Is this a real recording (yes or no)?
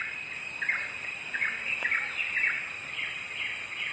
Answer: yes